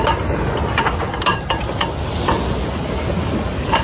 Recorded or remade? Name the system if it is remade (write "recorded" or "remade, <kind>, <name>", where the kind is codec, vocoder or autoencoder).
recorded